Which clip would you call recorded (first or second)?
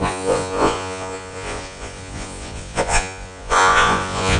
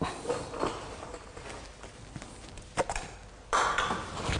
second